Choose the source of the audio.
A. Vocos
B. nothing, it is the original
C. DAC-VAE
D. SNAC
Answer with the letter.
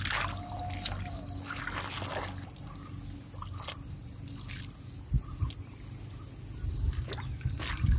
B